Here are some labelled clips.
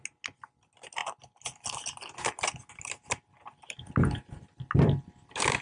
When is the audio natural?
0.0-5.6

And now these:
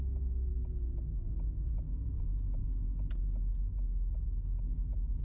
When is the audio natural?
0.0-5.2

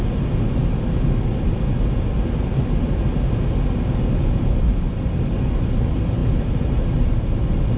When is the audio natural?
0.0-7.8

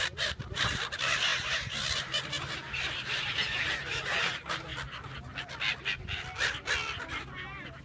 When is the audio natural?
4.7-7.8

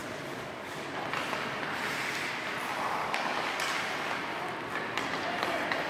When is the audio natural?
0.9-3.0; 3.6-5.9